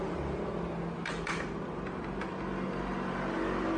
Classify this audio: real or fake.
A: real